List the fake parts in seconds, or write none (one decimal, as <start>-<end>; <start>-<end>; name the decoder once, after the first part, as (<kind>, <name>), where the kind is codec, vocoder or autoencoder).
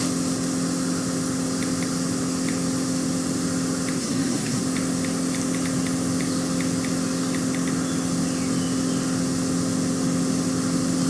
4.0-4.6 (codec, SNAC)